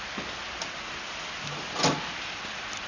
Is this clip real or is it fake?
real